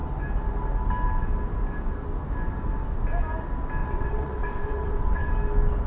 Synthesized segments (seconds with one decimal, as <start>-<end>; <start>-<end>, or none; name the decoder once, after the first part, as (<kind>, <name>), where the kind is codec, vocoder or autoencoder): 3.8-5.3 (vocoder, WaveNeXt)